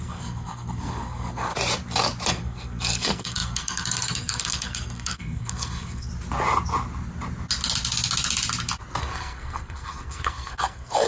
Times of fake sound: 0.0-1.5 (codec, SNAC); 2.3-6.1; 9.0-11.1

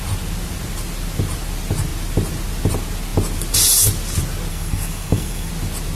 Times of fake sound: 4.5-5.5 (codec, SNAC)

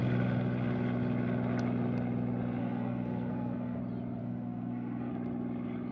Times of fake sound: 2.6-3.8 (codec, SNAC); 4.2-5.1

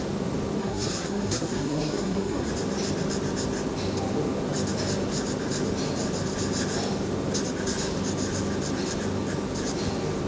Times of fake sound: 0.6-2.5 (codec, SNAC)

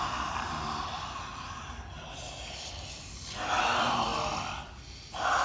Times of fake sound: none

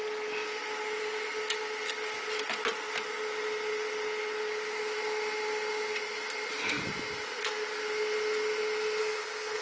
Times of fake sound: 9.0-9.6 (codec, SNAC)

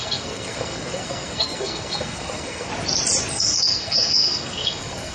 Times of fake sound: 0.0-2.7 (codec, SNAC); 3.3-5.1

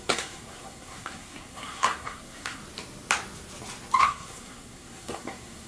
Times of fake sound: 0.0-2.6 (codec, SNAC); 4.0-5.7